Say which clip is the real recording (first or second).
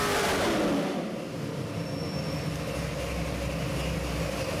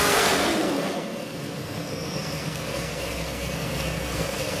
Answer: first